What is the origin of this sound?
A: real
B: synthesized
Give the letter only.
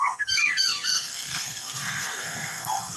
B